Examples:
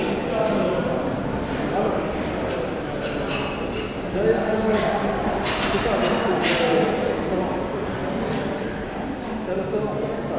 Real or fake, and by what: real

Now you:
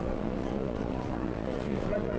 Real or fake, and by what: fake, vocoder, Vocos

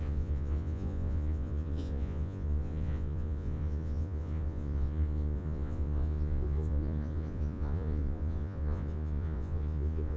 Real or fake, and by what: fake, vocoder, Vocos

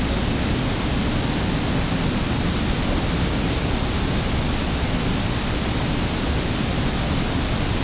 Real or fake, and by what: real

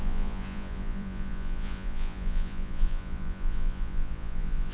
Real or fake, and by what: fake, vocoder, Vocos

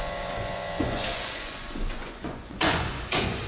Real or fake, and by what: fake, vocoder, Vocos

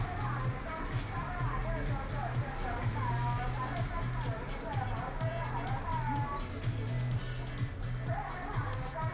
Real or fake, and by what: real